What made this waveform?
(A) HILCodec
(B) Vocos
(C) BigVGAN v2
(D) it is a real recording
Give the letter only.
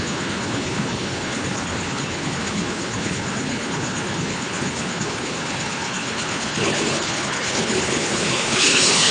A